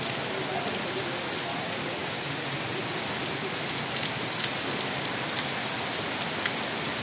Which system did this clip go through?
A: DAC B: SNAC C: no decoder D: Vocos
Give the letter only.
C